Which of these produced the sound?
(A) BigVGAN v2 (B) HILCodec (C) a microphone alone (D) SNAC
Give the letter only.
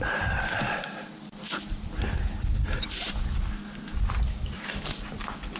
C